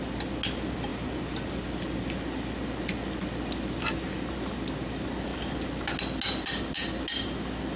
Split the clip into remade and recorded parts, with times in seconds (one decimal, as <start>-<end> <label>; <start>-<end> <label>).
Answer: 0.0-7.8 recorded